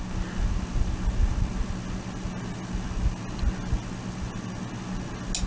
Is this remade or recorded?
recorded